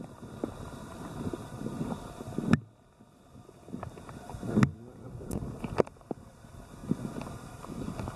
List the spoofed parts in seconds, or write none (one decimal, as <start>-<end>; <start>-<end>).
none